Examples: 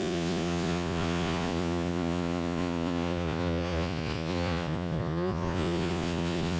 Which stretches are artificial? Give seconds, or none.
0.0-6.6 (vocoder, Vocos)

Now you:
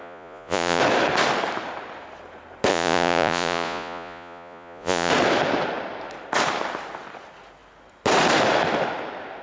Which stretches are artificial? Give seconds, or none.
0.0-0.8 (vocoder, Vocos); 2.7-5.1

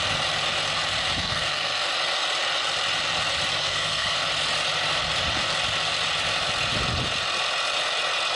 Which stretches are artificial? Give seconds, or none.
1.2-1.9 (codec, SNAC); 3.6-4.2

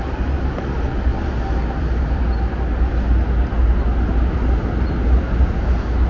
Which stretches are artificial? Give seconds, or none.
none

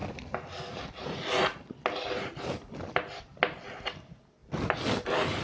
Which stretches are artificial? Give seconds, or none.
0.0-3.2 (vocoder, BigVGAN v2); 4.4-5.4

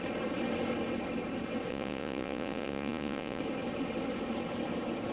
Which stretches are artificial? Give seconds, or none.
1.7-3.4 (vocoder, Vocos)

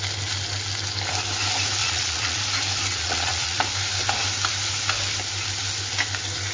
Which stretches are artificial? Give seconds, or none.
1.8-2.4 (vocoder, Vocos); 2.9-3.6

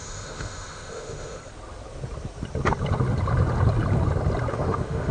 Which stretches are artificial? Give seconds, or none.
0.0-1.4 (autoencoder, DAC-VAE); 4.5-5.1